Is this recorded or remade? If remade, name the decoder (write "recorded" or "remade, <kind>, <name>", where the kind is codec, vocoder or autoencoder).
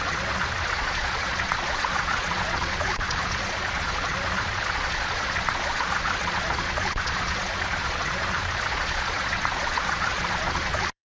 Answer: remade, vocoder, Vocos